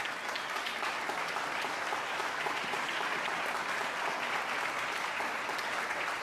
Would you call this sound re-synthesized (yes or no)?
no